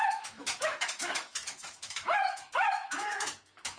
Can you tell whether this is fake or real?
fake